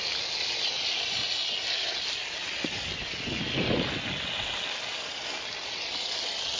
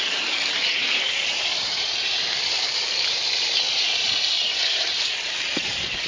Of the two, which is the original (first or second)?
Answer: first